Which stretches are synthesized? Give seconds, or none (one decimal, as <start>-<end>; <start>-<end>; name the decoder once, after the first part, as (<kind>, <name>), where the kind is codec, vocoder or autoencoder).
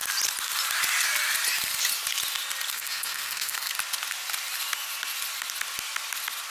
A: 2.7-3.7 (codec, SNAC)